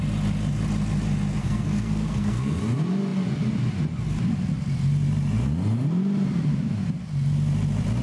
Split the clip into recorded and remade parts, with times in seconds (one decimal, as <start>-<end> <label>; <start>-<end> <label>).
0.0-1.4 recorded; 1.4-2.6 remade; 2.6-8.0 recorded